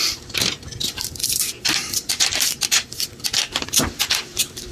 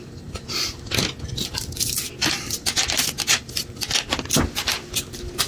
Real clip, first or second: second